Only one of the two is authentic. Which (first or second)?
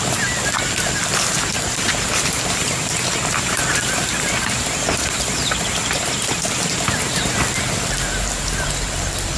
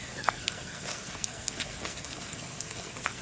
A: first